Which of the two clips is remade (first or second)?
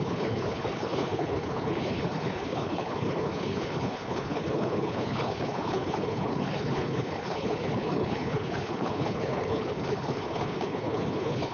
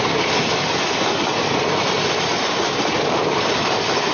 first